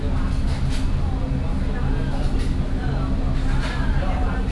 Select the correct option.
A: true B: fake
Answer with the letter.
A